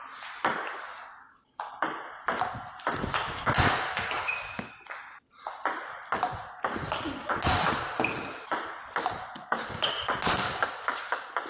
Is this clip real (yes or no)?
yes